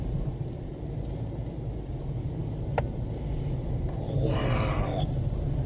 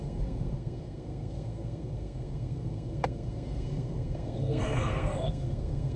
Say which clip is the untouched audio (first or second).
first